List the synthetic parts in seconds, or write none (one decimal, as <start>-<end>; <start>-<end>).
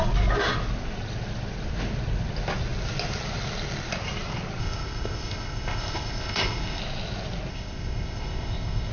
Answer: 4.6-6.8; 7.5-8.9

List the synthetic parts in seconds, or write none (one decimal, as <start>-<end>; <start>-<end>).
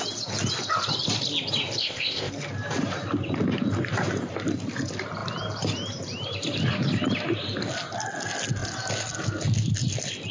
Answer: 1.8-2.3